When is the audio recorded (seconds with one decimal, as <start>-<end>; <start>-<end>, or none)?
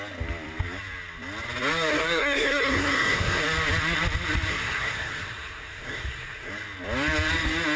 0.0-1.9; 3.4-4.5; 6.5-7.8